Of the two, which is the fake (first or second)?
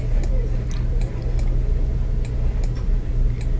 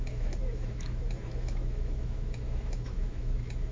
second